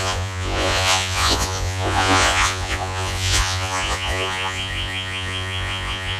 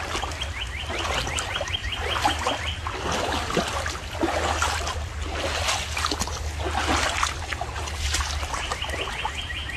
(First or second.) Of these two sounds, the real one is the second